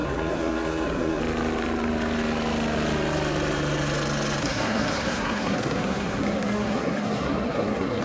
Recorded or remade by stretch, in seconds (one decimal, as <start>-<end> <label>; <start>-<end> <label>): 0.0-1.2 remade; 1.2-4.4 recorded; 4.4-8.0 remade